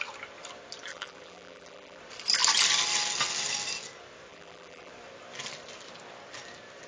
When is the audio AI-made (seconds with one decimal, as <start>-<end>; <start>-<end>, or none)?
0.9-2.0; 4.3-4.9